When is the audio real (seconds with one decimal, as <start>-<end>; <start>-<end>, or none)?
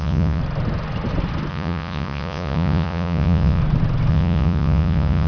0.4-1.5; 3.6-4.1